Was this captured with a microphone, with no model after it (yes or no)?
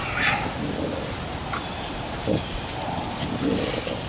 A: yes